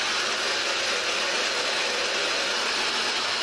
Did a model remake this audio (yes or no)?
no